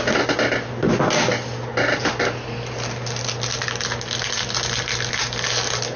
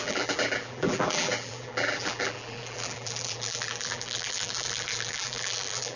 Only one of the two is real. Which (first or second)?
first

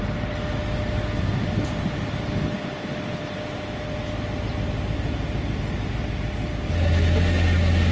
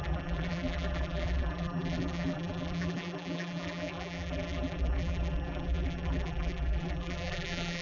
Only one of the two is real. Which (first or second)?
first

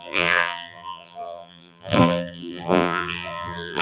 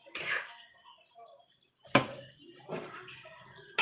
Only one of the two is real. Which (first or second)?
second